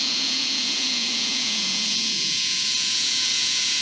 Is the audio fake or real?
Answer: fake